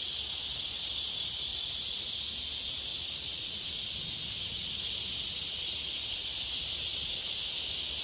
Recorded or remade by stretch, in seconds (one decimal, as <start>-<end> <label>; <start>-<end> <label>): 0.0-1.5 recorded; 1.5-2.1 remade; 2.1-2.9 recorded; 2.9-3.9 remade; 3.9-8.0 recorded